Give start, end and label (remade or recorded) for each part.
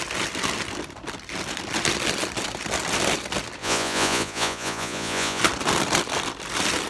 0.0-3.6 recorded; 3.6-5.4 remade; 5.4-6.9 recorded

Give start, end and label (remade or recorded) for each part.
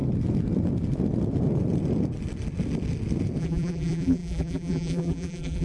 0.0-3.4 recorded; 3.4-5.6 remade